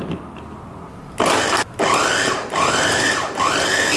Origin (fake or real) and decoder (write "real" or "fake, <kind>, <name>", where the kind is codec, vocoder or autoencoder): real